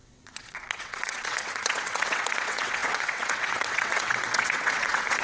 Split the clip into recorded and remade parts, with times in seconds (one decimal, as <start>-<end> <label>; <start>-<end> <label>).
0.0-5.2 remade